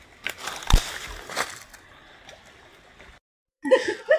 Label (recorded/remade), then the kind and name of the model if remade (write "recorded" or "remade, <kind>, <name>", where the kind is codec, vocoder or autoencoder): remade, vocoder, BigVGAN v2